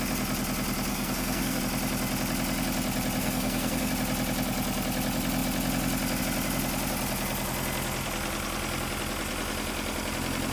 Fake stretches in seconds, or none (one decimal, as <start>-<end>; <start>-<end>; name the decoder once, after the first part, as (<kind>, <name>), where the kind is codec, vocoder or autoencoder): 0.9-1.6 (codec, SNAC); 3.2-3.9